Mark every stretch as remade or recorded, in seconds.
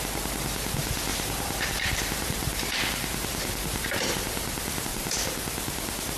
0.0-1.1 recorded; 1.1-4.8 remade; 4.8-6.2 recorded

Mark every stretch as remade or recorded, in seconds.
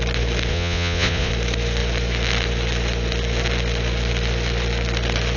0.0-0.5 recorded; 0.5-1.3 remade; 1.3-5.4 recorded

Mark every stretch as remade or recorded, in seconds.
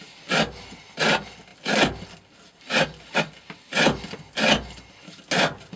0.0-5.8 recorded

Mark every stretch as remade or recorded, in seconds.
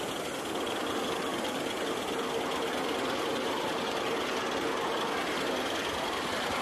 0.0-6.6 recorded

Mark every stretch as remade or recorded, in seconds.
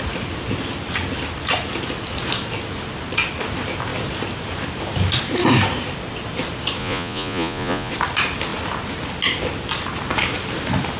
0.0-6.8 recorded; 6.8-7.9 remade; 7.9-11.0 recorded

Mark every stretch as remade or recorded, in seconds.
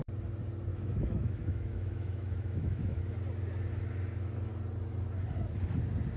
0.0-0.7 recorded; 0.7-3.0 remade; 3.0-6.2 recorded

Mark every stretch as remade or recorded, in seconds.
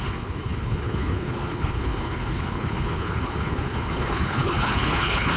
0.0-5.4 remade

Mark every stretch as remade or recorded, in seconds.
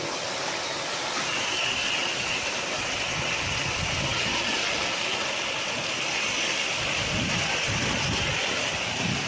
0.0-9.3 recorded